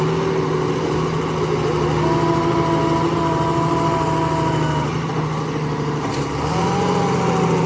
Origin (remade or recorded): recorded